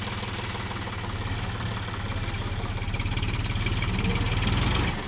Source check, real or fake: real